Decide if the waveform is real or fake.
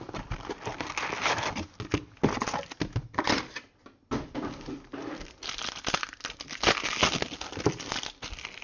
real